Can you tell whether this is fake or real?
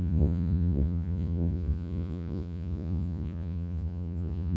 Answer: fake